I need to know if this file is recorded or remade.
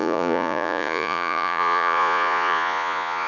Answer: remade